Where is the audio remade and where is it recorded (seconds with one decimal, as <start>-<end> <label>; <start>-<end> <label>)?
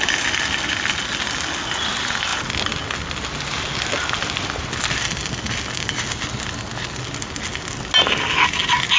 0.0-9.0 recorded